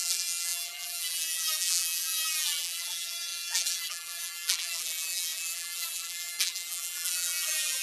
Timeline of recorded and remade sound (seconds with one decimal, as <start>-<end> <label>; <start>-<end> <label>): 0.0-7.8 remade